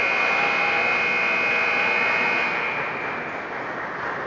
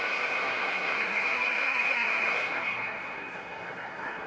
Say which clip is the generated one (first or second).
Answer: second